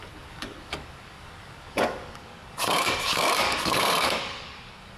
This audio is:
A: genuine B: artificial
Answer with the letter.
B